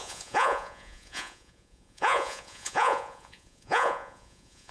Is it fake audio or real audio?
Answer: fake